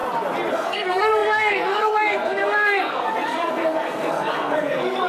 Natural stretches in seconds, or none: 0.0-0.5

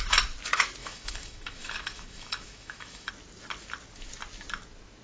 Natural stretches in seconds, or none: 0.0-0.8; 3.1-5.0